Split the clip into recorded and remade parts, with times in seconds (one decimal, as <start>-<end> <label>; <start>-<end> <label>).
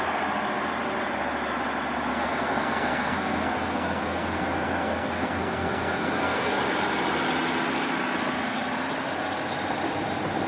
0.0-2.1 recorded; 2.1-6.6 remade; 6.6-10.5 recorded